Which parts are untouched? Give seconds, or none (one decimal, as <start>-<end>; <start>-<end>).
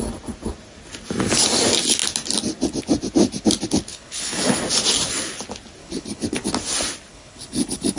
0.0-3.9; 4.6-5.8; 6.5-7.1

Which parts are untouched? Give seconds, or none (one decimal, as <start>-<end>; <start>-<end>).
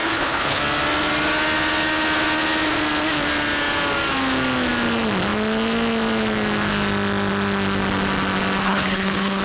0.6-8.6